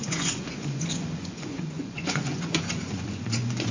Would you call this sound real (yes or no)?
no